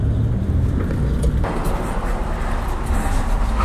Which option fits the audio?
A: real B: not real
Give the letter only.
A